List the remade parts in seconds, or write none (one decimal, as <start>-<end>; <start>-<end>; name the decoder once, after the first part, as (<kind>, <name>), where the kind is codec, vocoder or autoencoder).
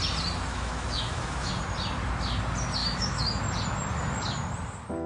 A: 0.5-1.5 (autoencoder, DAC-VAE); 2.8-3.4